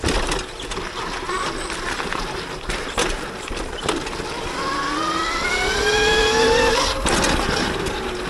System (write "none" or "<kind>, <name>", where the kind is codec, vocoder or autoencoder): none